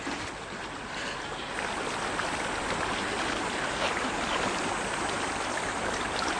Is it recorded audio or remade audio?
recorded